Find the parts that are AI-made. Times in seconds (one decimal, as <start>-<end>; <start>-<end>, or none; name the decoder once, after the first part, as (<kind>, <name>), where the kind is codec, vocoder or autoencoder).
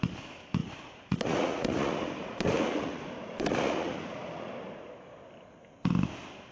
0.6-4.5 (vocoder, Vocos)